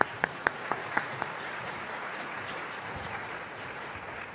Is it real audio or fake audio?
fake